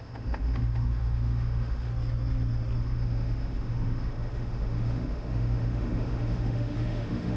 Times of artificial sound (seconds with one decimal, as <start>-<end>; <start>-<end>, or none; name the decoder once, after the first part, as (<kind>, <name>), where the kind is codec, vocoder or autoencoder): 0.0-1.9 (autoencoder, DAC-VAE); 2.8-7.4